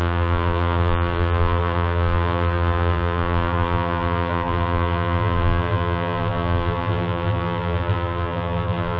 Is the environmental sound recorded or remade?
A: remade